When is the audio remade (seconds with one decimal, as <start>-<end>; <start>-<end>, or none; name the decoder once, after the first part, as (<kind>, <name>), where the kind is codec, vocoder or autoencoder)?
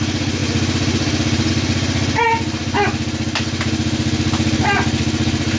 none